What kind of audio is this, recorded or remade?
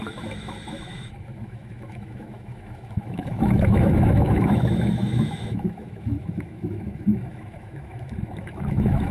remade